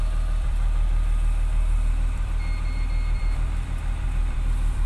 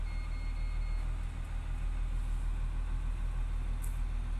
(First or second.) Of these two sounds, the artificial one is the first